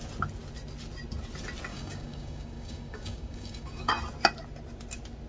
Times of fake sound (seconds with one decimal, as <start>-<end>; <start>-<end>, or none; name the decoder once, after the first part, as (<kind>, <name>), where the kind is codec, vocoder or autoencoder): 1.7-3.9 (codec, DAC)